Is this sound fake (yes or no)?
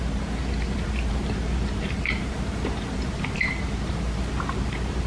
yes